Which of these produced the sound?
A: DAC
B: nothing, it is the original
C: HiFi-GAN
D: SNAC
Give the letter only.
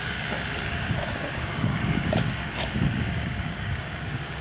A